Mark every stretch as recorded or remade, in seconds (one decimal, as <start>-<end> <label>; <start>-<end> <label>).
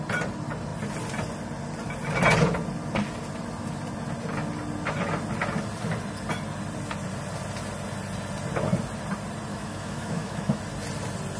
0.0-9.5 recorded; 9.5-10.6 remade; 10.6-11.4 recorded